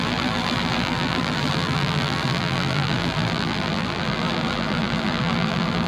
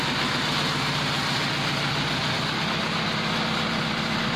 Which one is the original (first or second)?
second